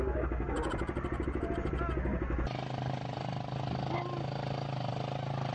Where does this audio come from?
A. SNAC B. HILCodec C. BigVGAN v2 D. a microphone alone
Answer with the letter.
D